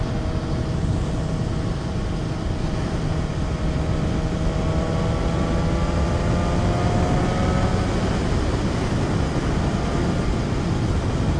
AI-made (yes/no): no